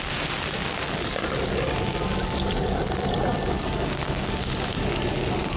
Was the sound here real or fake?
real